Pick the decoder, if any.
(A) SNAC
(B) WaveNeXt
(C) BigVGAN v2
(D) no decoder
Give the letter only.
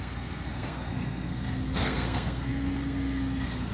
A